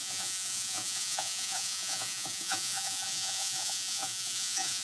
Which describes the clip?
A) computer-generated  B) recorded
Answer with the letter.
A